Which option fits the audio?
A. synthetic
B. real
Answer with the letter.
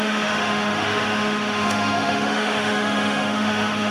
A